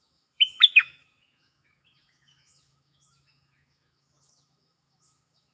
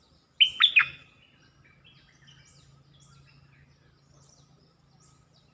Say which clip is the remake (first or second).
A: first